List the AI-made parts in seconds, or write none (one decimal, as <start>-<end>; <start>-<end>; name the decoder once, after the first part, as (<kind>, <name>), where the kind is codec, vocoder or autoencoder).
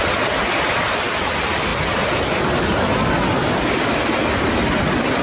none